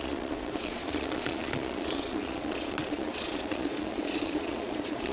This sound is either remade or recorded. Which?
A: remade